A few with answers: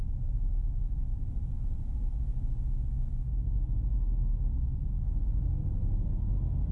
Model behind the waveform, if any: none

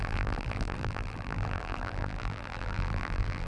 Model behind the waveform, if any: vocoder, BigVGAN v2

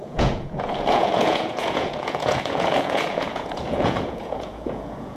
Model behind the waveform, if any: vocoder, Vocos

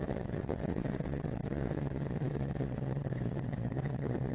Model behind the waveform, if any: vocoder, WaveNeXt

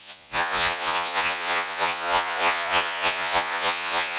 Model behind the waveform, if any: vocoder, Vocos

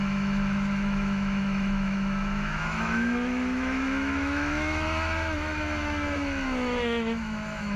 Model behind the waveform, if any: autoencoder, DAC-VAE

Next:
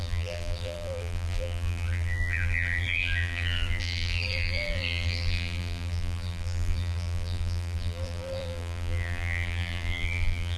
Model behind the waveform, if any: vocoder, BigVGAN v2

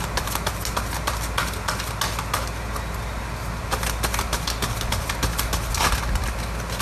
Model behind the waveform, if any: none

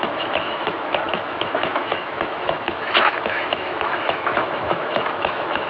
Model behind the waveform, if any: autoencoder, DAC-VAE